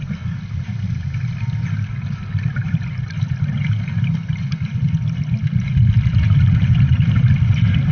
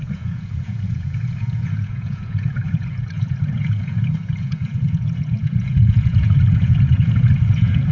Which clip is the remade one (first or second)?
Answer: second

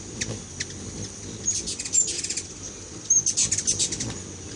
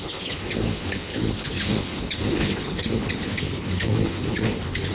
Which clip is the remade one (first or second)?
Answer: second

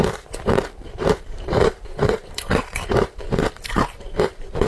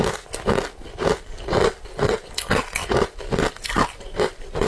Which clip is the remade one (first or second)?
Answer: first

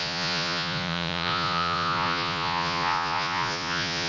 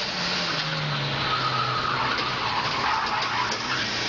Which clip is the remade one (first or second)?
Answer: first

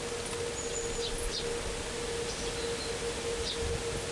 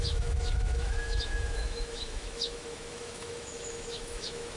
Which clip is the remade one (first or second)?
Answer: second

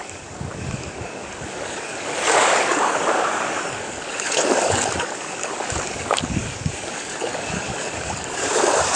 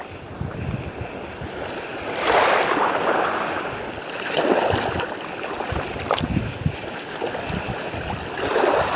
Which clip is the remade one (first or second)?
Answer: first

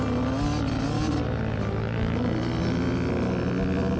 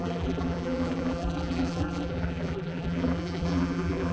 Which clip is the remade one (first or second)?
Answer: second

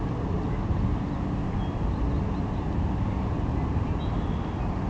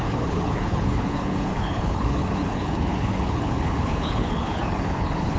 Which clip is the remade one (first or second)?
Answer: second